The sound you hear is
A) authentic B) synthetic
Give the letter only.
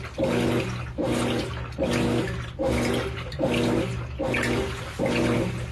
A